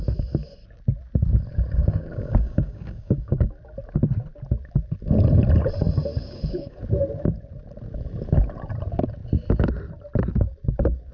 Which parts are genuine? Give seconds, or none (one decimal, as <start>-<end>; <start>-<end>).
0.0-1.8; 3.5-6.1; 6.8-11.1